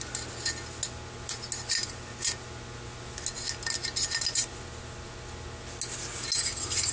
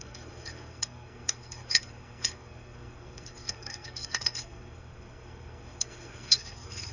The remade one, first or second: second